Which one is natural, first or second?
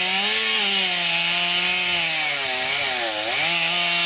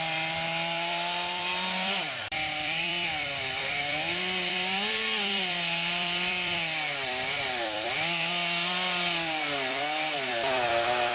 first